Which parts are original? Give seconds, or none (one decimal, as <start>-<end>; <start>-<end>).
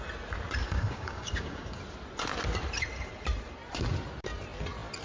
0.0-0.6; 1.8-5.0